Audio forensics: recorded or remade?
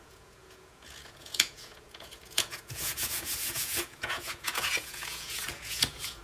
remade